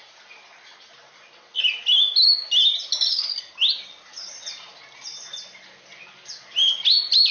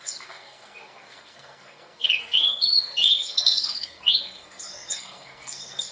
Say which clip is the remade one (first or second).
second